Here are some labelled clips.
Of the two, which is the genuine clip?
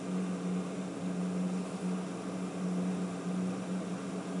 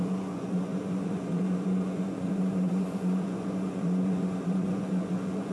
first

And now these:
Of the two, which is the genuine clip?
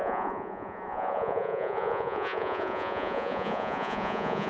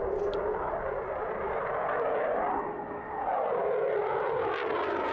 second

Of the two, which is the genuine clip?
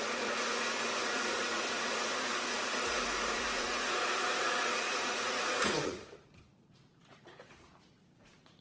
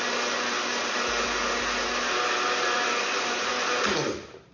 second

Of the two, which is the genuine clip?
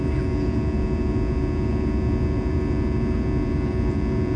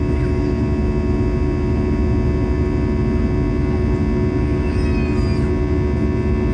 second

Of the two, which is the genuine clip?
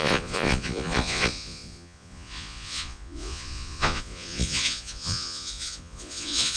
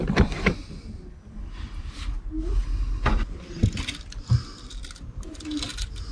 second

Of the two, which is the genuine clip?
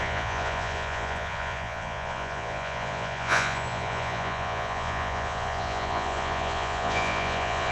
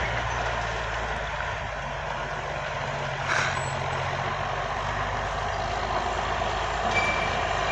second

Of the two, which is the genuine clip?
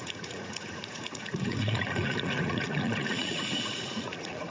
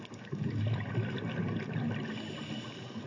second